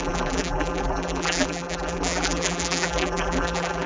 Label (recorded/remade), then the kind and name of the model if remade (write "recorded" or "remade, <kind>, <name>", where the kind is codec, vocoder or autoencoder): remade, vocoder, BigVGAN v2